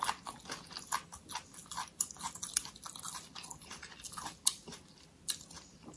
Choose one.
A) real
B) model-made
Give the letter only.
A